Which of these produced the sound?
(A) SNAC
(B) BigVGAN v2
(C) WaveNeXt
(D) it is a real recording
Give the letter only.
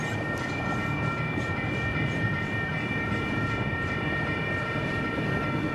B